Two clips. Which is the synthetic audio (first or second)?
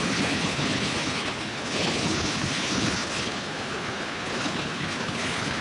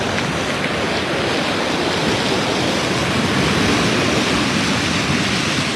first